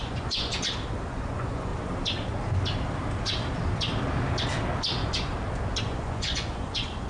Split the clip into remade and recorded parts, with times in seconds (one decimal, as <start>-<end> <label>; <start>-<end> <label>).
0.0-0.5 remade; 0.5-1.1 recorded; 1.1-1.7 remade; 1.7-5.8 recorded; 5.8-7.1 remade